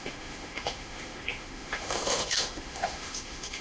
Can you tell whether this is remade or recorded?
remade